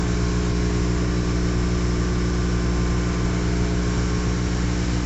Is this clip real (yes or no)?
yes